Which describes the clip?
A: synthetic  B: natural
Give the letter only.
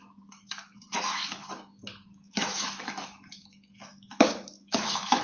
A